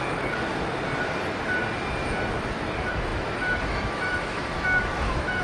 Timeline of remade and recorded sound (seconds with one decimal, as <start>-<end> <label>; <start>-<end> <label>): 0.0-0.5 remade; 0.5-2.5 recorded; 2.5-5.4 remade